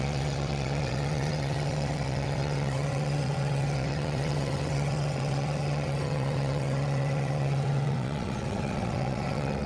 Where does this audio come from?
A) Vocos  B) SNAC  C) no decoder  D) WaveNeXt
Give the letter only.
D